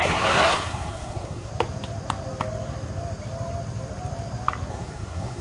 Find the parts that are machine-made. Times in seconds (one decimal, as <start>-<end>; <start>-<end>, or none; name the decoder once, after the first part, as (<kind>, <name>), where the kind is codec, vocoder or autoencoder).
0.0-1.5 (codec, SNAC); 4.7-5.4